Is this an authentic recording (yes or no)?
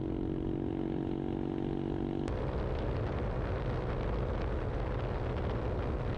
yes